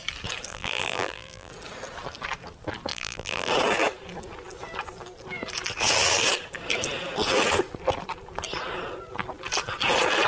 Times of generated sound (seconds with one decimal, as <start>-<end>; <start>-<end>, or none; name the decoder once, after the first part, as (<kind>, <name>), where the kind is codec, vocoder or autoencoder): 0.5-1.5 (vocoder, BigVGAN v2); 2.9-3.5